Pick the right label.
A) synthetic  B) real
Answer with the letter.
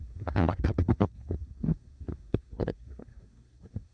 A